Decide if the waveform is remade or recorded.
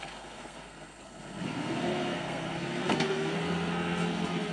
remade